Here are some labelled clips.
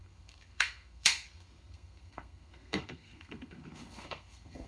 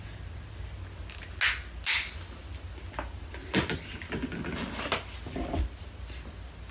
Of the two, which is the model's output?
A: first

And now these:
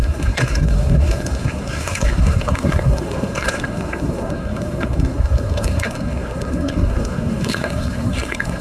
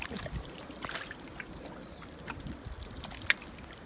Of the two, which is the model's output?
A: first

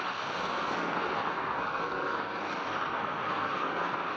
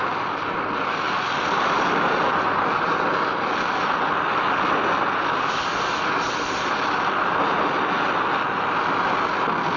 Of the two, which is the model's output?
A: first